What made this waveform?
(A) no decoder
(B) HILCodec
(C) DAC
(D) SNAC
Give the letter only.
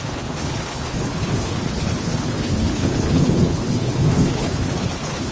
B